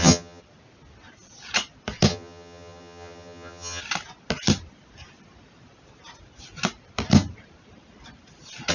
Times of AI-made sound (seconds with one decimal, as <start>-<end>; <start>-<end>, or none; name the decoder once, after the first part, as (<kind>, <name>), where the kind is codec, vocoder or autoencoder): 0.0-0.4 (vocoder, HiFi-GAN); 2.1-3.8